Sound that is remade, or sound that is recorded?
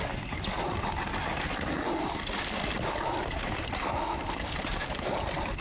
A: recorded